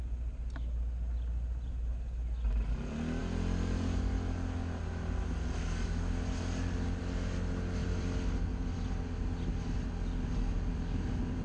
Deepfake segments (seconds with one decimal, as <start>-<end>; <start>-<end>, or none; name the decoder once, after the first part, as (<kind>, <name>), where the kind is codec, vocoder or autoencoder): 7.8-8.3 (vocoder, BigVGAN v2)